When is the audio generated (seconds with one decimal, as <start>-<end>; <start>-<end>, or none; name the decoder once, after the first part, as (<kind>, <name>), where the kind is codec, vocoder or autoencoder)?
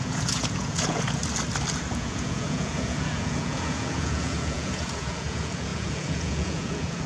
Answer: 0.0-1.2 (vocoder, Vocos); 1.7-7.1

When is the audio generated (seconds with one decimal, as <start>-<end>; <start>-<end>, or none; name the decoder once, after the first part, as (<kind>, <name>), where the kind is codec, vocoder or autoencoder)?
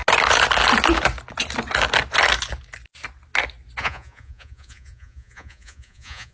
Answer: 3.8-6.3 (vocoder, Vocos)